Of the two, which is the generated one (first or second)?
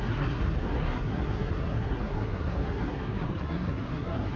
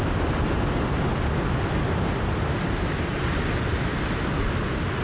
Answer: first